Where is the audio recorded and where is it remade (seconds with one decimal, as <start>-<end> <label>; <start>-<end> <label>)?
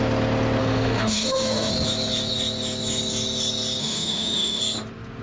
0.0-0.6 recorded; 0.6-1.7 remade; 1.7-3.8 recorded; 3.8-4.6 remade; 4.6-5.2 recorded